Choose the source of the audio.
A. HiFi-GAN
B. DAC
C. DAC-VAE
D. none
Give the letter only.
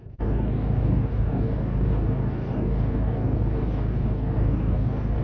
B